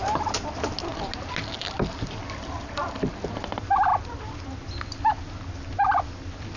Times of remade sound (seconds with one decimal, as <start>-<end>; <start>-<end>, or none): none